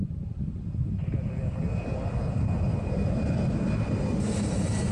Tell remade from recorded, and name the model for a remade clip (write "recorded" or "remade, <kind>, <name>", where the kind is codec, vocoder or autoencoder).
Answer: recorded